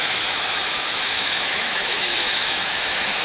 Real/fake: fake